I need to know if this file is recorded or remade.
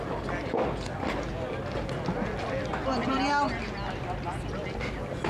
recorded